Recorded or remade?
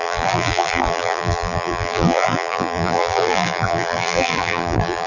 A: remade